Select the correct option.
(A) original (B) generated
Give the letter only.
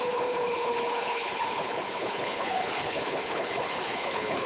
B